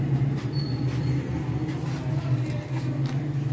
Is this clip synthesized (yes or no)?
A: no